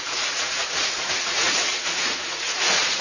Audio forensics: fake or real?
fake